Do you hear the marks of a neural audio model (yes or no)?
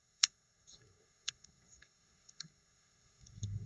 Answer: yes